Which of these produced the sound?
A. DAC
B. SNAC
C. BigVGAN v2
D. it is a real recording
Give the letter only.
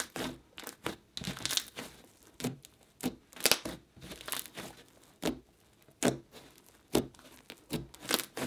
D